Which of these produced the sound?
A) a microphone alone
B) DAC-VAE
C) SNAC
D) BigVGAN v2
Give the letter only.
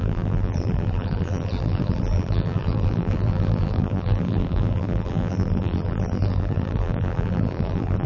D